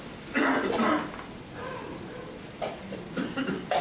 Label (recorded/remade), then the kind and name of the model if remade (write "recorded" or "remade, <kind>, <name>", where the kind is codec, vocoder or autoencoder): recorded